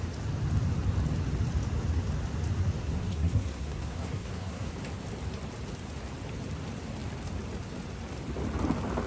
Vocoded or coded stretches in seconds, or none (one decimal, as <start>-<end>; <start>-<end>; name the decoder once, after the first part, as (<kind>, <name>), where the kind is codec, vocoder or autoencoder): 2.8-4.7 (codec, SNAC)